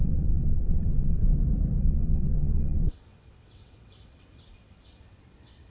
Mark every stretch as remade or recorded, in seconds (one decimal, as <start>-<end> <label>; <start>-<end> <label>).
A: 0.0-1.2 remade; 1.2-1.8 recorded; 1.8-5.7 remade